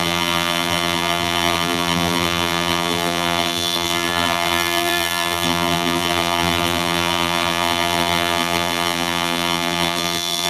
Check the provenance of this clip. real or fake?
fake